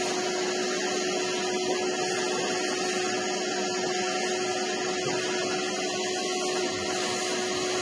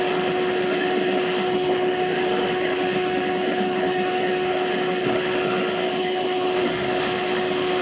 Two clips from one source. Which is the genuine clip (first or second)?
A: first